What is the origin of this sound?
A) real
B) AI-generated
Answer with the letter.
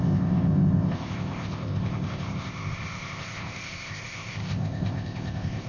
B